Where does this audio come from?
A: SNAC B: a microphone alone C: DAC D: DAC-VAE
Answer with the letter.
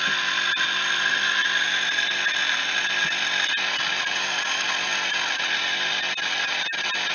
B